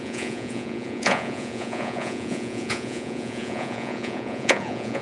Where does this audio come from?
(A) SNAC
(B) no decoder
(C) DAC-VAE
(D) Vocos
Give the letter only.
D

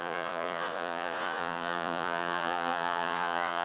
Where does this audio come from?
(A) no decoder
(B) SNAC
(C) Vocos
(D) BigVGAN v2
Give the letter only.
C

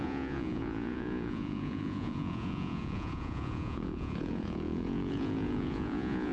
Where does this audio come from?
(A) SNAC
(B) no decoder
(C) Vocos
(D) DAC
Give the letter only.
C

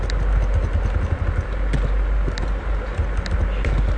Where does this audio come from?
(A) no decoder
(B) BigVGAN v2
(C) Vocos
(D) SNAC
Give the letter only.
A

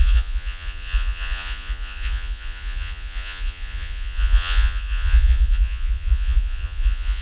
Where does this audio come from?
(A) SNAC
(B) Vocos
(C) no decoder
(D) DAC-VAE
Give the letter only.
B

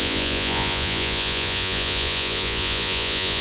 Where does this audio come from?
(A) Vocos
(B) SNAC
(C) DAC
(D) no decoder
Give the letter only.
A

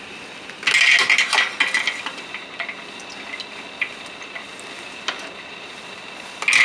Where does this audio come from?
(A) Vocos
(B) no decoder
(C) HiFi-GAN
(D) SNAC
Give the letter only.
B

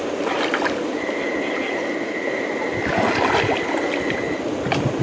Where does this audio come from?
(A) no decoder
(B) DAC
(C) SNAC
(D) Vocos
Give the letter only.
A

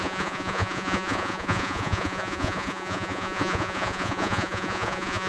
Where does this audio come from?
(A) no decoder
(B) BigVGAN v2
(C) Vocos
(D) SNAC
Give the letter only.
C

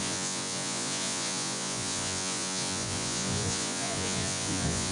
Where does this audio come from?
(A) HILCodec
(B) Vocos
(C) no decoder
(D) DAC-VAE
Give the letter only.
B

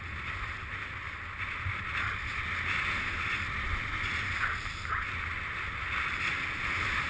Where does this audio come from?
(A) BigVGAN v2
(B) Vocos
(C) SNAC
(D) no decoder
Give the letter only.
D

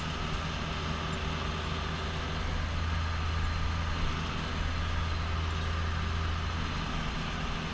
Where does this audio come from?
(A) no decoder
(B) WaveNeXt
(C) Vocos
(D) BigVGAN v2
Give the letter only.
A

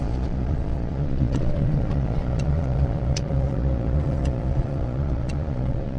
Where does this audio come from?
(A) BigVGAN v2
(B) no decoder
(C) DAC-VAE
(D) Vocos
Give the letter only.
D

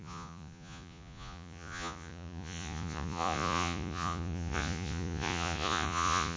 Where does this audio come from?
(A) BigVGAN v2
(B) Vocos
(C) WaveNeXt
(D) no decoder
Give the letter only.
B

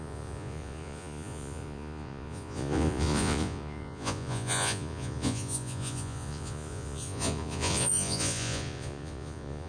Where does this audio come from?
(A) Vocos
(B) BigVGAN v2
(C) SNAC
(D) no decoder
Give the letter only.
A